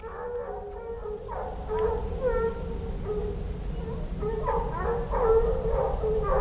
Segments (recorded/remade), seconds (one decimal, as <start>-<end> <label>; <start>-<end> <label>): 0.0-6.4 recorded